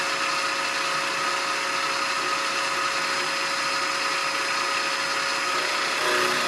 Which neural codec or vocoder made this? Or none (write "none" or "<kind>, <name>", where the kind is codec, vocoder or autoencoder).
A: none